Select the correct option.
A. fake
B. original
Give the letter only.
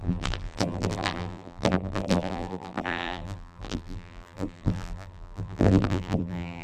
A